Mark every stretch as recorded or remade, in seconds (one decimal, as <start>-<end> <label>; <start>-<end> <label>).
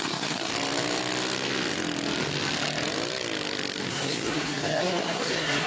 0.0-0.5 remade; 0.5-3.9 recorded; 3.9-5.7 remade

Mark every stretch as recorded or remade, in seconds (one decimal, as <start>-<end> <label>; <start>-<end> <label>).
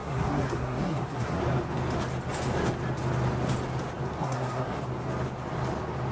0.0-1.4 remade; 1.4-4.2 recorded; 4.2-4.8 remade; 4.8-6.1 recorded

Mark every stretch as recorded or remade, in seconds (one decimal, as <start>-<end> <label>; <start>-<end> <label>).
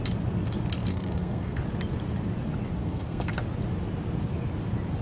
0.0-0.9 recorded; 0.9-1.6 remade; 1.6-2.8 recorded; 2.8-3.3 remade; 3.3-5.0 recorded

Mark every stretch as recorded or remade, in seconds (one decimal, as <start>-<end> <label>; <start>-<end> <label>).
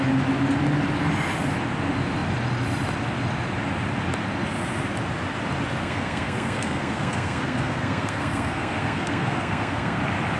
0.0-5.8 recorded; 5.8-10.0 remade; 10.0-10.4 recorded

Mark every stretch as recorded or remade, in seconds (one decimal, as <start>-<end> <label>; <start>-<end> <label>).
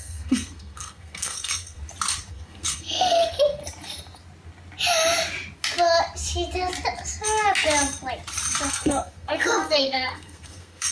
0.0-1.8 remade; 1.8-2.3 recorded; 2.3-3.6 remade; 3.6-8.7 recorded; 8.7-10.9 remade